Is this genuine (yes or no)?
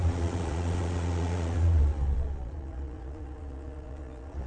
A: no